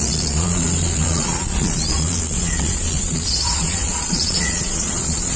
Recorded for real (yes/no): no